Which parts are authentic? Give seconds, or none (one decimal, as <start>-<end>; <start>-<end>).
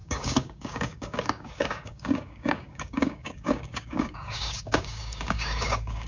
none